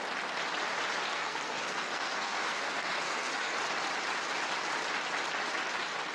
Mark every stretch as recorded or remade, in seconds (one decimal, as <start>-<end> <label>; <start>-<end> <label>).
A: 0.0-1.1 recorded; 1.1-3.6 remade; 3.6-6.1 recorded